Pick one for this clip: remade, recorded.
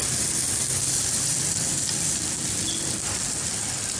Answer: recorded